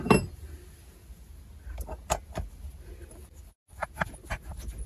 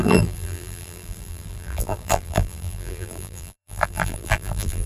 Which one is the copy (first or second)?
second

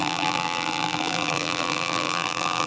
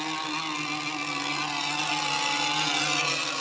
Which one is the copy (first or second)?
first